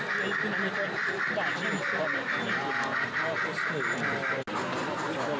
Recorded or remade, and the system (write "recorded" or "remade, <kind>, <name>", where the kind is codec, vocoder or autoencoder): recorded